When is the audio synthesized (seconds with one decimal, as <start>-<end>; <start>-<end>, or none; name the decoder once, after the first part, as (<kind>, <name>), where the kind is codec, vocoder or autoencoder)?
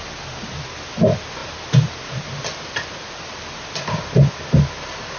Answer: none